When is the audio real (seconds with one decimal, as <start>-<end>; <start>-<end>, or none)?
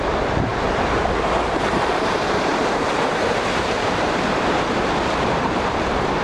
none